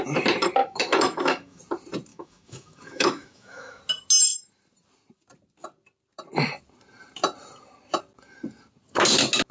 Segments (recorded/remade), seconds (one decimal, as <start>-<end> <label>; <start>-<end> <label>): 0.0-0.6 recorded; 0.6-1.6 remade; 1.6-2.1 recorded; 2.1-3.8 remade; 3.8-9.5 recorded